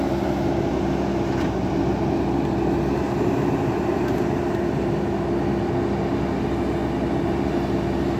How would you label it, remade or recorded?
recorded